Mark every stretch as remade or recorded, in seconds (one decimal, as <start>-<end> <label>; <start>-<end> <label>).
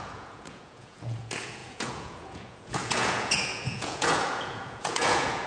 0.0-5.5 remade